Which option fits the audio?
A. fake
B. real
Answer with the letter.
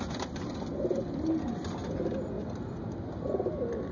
B